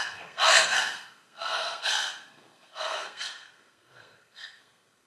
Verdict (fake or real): fake